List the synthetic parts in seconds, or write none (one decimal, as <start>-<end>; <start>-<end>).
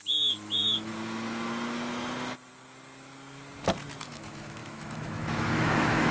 0.0-0.9; 4.0-6.1